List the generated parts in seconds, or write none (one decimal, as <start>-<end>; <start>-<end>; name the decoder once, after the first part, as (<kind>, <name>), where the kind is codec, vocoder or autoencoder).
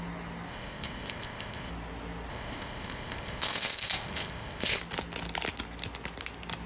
0.5-1.7 (codec, ZipCodec); 2.3-4.8